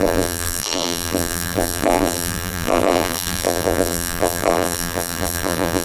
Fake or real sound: fake